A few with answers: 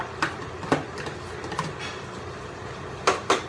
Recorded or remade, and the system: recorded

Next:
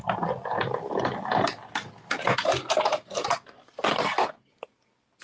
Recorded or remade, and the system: recorded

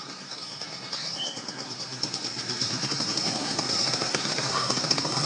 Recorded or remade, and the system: remade, codec, SNAC